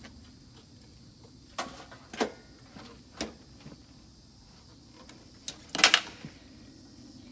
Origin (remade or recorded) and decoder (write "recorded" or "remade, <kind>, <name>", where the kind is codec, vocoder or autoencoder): recorded